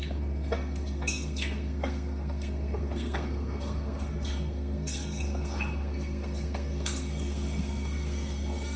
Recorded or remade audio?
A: remade